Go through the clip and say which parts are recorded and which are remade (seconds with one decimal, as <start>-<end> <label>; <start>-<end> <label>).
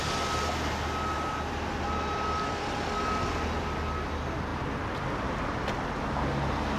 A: 0.0-6.8 recorded